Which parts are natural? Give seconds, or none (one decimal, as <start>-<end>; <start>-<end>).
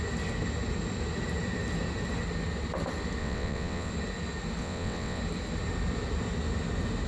0.0-3.2; 3.9-4.6; 5.2-7.1